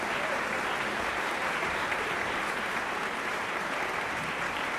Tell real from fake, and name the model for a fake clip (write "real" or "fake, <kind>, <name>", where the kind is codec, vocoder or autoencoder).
fake, vocoder, BigVGAN v2